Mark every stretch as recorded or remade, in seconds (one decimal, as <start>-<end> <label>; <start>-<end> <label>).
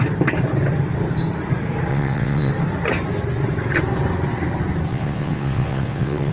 0.0-1.9 recorded; 1.9-2.5 remade; 2.5-4.9 recorded; 4.9-6.3 remade